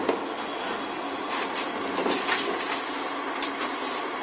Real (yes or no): yes